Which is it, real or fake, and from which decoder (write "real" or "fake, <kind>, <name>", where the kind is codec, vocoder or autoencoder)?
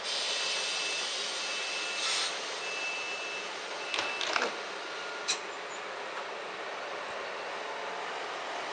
real